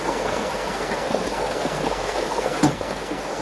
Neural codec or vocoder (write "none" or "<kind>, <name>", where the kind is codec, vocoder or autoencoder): codec, SNAC